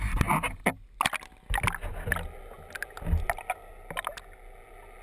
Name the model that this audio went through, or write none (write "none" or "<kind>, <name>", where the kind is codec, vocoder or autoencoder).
none